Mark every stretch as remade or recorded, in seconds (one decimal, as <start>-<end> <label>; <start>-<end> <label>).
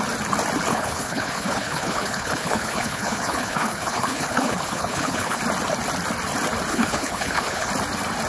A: 0.0-0.7 recorded; 0.7-5.4 remade; 5.4-6.7 recorded; 6.7-7.7 remade; 7.7-8.3 recorded